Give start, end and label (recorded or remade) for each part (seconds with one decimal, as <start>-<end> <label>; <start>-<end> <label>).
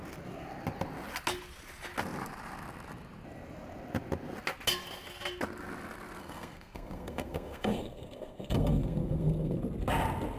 0.0-6.2 recorded; 6.2-9.6 remade; 9.6-10.4 recorded